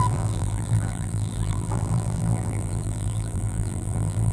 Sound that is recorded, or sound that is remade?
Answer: remade